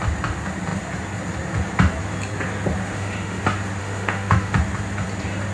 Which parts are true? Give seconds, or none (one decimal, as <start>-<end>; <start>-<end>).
0.0-2.8; 3.4-3.8; 4.6-5.5